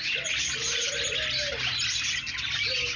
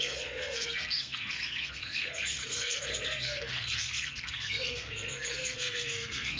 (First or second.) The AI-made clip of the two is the second